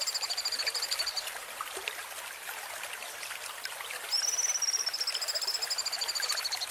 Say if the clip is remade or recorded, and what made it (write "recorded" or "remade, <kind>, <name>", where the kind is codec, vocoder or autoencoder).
recorded